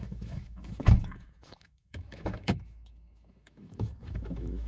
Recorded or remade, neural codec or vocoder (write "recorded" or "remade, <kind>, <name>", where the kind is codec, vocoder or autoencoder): remade, autoencoder, DAC-VAE